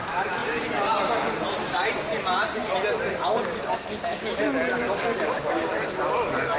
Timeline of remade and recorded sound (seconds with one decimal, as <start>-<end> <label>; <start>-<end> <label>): 0.0-6.6 recorded